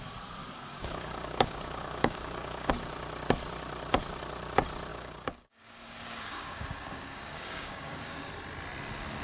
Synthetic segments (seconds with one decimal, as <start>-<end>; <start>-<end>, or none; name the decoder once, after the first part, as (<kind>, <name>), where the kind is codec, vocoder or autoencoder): 0.4-2.7 (codec, DAC); 4.9-8.3